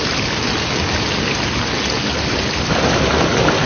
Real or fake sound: real